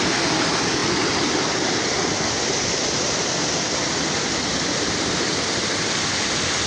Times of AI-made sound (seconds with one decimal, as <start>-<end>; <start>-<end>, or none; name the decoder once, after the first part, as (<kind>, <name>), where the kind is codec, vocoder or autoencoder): none